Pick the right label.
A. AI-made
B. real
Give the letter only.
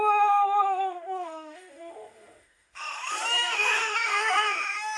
A